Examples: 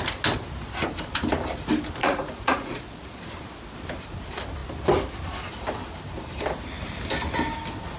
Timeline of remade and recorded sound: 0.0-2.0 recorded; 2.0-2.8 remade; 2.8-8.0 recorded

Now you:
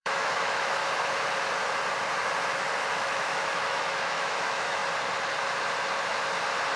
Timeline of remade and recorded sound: 0.0-0.8 remade; 0.8-2.9 recorded; 2.9-4.8 remade; 4.8-6.8 recorded

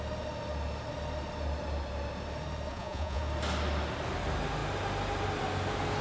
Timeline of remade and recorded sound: 0.0-2.7 recorded; 2.7-3.2 remade; 3.2-6.0 recorded